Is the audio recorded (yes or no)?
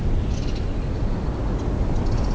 yes